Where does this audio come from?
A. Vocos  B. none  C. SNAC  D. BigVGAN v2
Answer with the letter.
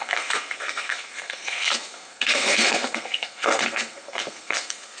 C